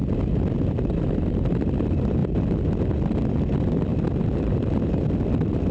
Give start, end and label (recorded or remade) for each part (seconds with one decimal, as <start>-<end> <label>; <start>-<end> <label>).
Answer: 0.0-0.5 recorded; 0.5-2.2 remade; 2.2-3.2 recorded; 3.2-3.9 remade; 3.9-4.4 recorded; 4.4-5.7 remade